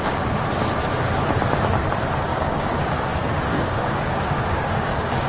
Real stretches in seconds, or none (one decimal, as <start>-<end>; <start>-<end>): 0.0-2.3